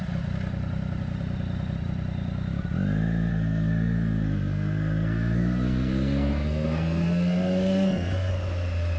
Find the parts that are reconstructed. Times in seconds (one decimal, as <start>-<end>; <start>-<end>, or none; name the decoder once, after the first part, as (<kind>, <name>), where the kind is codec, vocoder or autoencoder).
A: 3.3-8.3 (codec, SNAC)